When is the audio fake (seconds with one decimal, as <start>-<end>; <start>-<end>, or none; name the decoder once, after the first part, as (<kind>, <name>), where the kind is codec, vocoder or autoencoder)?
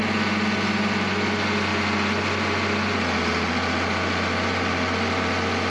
none